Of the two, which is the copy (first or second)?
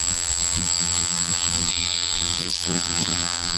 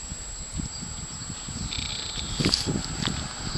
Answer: first